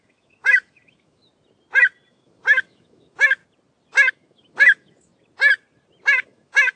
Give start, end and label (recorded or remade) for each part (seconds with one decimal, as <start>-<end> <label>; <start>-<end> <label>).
0.0-1.3 remade; 1.3-2.1 recorded; 2.1-3.4 remade; 3.4-4.1 recorded; 4.1-5.1 remade; 5.1-6.2 recorded; 6.2-6.8 remade